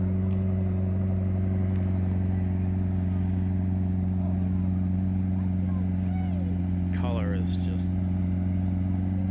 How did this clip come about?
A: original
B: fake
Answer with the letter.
A